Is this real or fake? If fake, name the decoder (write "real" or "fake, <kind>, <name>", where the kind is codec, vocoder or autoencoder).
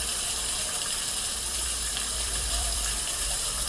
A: fake, vocoder, BigVGAN v2